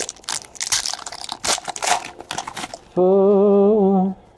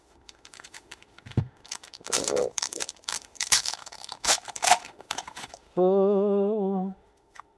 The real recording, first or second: first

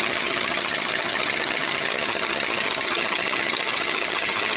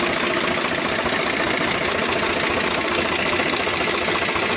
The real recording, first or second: second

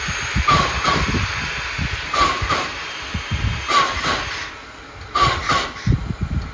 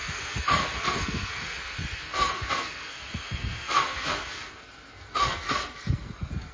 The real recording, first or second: first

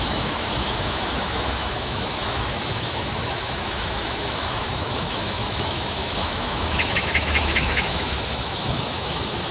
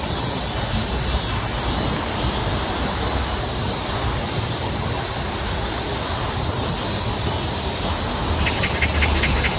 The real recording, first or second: second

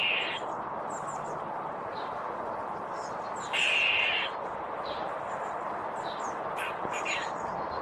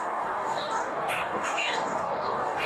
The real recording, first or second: first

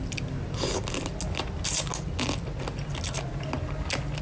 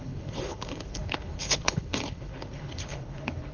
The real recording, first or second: first